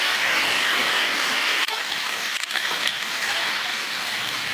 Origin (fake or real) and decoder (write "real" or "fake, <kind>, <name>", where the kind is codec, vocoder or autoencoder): fake, codec, DAC